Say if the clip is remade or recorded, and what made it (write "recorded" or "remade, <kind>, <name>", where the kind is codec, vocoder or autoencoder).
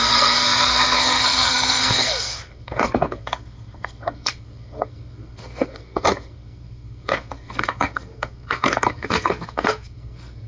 remade, codec, SNAC